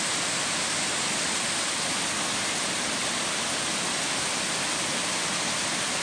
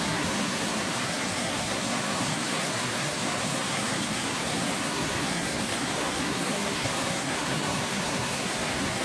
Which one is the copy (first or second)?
second